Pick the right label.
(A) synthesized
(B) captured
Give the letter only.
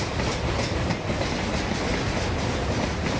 B